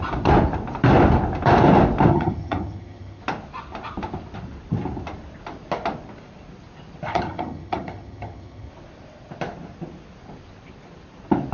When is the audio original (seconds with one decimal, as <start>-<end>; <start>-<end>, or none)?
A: 0.0-2.1; 3.2-7.1; 8.7-11.5